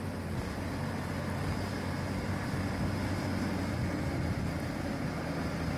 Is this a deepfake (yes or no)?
no